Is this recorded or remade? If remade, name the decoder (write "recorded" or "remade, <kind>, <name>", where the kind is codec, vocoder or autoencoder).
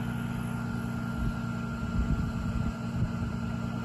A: recorded